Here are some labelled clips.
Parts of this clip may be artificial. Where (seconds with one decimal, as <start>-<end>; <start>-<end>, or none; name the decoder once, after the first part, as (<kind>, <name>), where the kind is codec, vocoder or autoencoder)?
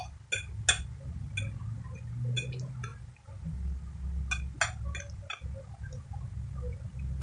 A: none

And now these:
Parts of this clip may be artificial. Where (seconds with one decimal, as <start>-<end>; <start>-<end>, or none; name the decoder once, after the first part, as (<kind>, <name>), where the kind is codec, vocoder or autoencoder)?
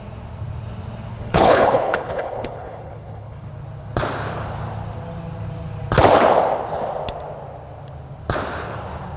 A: 1.1-3.5 (codec, HILCodec)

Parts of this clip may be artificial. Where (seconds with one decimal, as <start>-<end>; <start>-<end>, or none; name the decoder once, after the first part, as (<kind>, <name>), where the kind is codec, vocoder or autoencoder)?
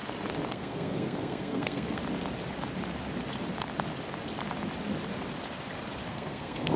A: 0.5-2.0 (codec, SNAC); 6.1-6.8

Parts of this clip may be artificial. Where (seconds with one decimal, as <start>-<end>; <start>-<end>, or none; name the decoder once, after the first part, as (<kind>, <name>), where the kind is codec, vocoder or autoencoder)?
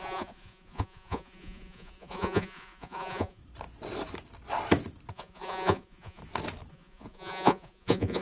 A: 0.0-3.4 (vocoder, Vocos); 5.1-6.2; 6.7-8.2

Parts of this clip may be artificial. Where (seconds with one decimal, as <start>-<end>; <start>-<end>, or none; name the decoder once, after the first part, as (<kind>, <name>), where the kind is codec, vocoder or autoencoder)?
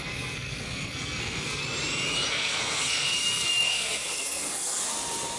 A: 0.0-1.6 (codec, SNAC); 2.3-4.8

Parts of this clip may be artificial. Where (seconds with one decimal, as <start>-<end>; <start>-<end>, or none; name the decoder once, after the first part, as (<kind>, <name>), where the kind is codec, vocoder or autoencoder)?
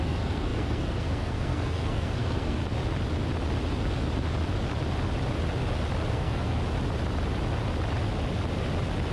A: 0.0-2.6 (codec, SNAC); 6.1-6.6